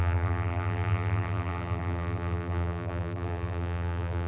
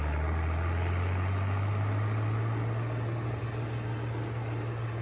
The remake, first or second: first